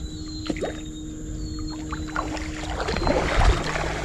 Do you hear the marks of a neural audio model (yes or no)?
no